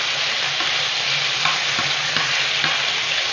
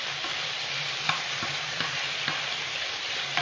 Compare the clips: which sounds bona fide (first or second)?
first